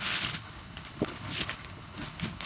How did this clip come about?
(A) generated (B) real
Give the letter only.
A